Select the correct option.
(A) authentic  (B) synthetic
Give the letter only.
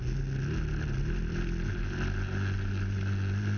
A